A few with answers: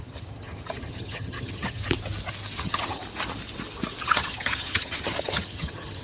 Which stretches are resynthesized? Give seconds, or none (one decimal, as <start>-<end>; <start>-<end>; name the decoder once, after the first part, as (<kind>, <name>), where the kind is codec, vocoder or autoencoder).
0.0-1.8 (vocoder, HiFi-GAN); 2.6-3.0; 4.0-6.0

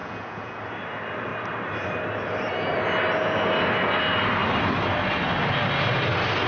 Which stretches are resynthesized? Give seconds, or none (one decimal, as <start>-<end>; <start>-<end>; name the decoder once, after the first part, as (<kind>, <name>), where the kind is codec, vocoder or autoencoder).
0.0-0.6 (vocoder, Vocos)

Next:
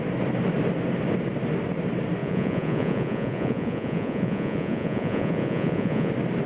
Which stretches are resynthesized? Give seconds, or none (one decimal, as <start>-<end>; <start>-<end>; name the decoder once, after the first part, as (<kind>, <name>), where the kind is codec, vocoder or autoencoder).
2.2-6.1 (vocoder, Vocos)